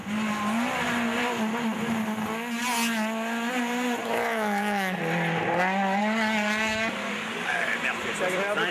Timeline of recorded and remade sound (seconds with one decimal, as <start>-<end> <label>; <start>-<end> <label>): 0.0-4.0 recorded; 4.0-5.0 remade; 5.0-6.0 recorded; 6.0-7.7 remade; 7.7-8.7 recorded